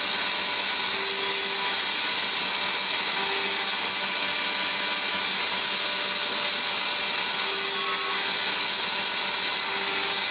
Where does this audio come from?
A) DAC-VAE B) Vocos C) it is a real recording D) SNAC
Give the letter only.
C